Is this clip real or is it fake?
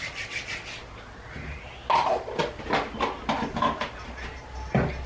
real